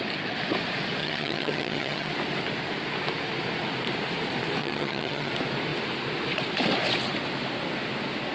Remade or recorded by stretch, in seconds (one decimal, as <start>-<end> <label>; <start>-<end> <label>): 0.0-1.0 recorded; 1.0-2.1 remade; 2.1-4.6 recorded; 4.6-5.3 remade; 5.3-8.3 recorded

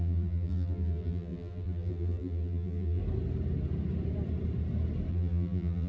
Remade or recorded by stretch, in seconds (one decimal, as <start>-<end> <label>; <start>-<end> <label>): 0.0-3.0 remade; 3.0-5.1 recorded; 5.1-5.9 remade

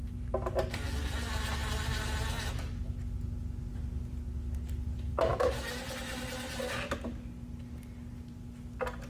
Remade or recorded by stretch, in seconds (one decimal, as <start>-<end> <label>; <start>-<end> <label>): 0.0-9.1 recorded

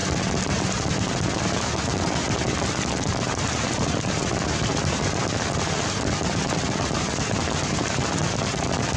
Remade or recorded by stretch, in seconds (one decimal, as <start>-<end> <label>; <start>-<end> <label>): 0.0-9.0 recorded

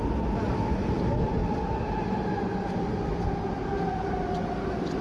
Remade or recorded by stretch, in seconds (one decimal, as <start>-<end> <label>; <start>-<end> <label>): 0.0-5.0 recorded